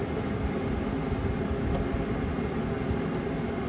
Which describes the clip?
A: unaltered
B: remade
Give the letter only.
A